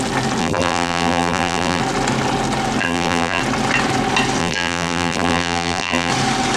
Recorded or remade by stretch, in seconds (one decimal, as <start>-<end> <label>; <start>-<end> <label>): 0.0-0.4 recorded; 0.4-1.8 remade; 1.8-2.8 recorded; 2.8-3.4 remade; 3.4-4.4 recorded; 4.4-6.1 remade; 6.1-6.6 recorded